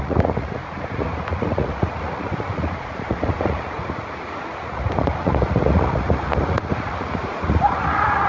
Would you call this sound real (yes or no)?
no